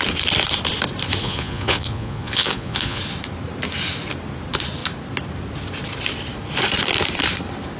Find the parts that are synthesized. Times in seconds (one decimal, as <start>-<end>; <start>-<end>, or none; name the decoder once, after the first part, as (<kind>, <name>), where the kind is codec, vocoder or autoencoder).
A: 1.2-3.0 (vocoder, Vocos)